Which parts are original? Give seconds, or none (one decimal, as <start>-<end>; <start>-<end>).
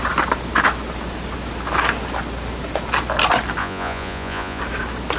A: 0.0-3.6; 4.6-5.2